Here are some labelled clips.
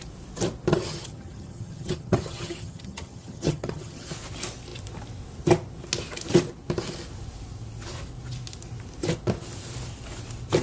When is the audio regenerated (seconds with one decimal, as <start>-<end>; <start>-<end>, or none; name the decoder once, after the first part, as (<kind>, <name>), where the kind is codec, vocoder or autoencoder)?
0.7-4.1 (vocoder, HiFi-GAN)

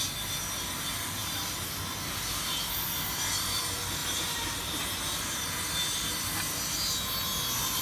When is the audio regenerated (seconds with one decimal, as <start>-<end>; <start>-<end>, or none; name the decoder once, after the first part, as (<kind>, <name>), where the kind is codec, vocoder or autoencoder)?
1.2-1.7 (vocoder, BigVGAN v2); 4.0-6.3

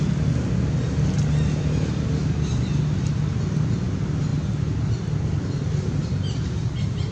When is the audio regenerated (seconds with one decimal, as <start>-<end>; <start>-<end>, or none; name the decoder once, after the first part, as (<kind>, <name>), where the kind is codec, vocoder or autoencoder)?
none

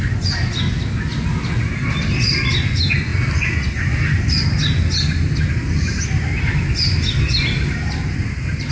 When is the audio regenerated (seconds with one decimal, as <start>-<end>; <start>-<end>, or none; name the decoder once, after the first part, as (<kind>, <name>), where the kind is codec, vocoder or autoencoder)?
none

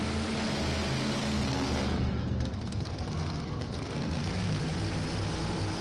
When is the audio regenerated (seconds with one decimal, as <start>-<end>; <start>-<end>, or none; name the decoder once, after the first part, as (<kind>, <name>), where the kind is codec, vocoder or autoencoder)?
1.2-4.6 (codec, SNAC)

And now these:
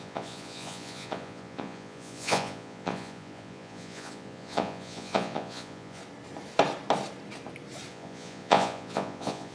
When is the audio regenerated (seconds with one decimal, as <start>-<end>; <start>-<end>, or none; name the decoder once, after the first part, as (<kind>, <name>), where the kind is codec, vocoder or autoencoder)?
0.0-6.0 (vocoder, Vocos); 7.9-9.5